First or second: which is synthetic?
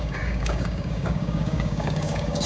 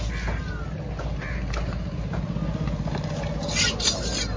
first